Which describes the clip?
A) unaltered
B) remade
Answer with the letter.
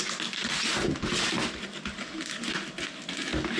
A